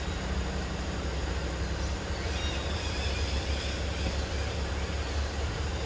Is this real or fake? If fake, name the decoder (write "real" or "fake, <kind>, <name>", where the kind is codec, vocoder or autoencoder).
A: real